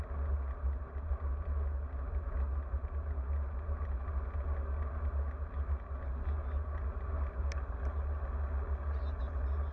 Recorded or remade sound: recorded